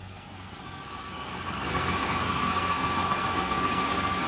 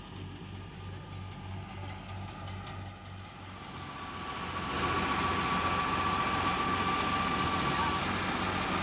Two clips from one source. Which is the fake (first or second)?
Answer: first